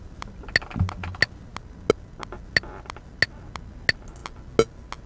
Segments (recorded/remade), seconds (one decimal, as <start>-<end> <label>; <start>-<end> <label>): 0.0-5.1 recorded